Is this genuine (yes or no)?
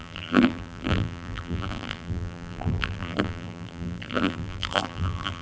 no